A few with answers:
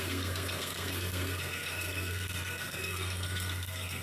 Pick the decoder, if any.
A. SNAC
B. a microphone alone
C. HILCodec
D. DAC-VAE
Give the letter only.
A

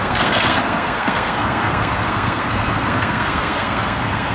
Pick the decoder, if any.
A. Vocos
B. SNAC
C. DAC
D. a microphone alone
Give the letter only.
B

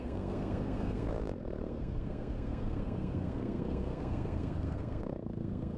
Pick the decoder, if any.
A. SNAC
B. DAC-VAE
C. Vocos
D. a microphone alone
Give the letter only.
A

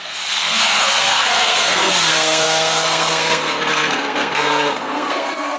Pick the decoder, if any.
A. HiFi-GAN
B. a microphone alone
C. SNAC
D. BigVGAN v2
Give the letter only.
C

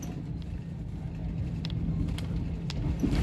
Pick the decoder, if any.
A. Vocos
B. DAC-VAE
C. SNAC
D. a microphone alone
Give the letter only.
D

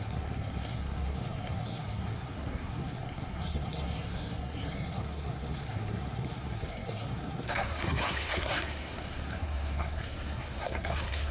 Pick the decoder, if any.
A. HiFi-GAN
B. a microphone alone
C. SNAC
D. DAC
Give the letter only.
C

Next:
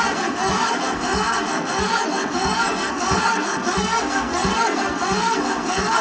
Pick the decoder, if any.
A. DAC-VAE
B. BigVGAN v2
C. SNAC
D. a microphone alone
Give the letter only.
C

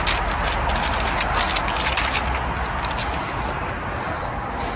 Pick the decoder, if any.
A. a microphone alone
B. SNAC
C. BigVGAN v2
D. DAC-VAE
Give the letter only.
A